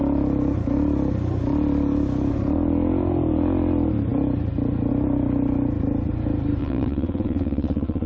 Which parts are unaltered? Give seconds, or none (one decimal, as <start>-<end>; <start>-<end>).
0.0-6.6